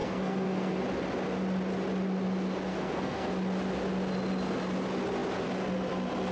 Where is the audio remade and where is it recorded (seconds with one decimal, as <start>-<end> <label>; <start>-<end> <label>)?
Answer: 0.0-0.8 remade; 0.8-2.7 recorded; 2.7-3.3 remade; 3.3-6.3 recorded